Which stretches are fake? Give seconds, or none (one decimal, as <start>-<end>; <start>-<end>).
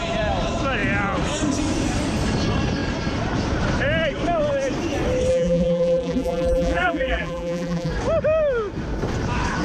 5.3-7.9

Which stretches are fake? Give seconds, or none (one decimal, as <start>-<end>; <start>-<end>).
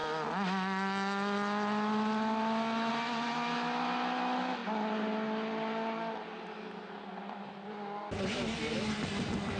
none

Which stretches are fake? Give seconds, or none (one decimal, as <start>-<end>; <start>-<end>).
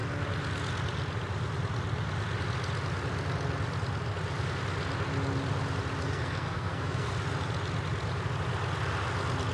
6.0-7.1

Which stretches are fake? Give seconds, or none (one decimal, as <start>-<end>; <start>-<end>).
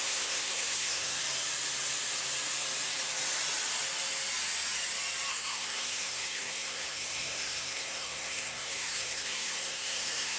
0.0-1.2; 5.3-10.4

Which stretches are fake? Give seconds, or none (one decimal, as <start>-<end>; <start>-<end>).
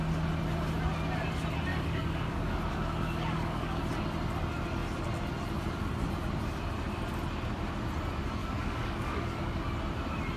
1.7-3.8; 8.4-9.6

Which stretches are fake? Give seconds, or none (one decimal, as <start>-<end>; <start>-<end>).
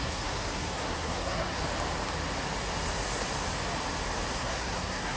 0.0-1.6; 4.3-5.2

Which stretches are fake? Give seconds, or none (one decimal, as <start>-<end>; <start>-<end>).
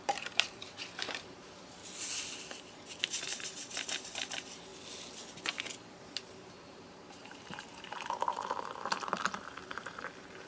0.0-4.7; 5.9-10.5